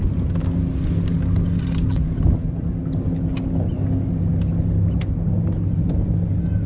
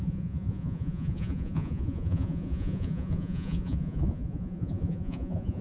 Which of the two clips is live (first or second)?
first